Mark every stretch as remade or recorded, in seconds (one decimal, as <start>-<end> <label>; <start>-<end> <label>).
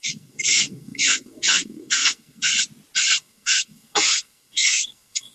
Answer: 0.0-2.5 remade; 2.5-3.2 recorded; 3.2-5.3 remade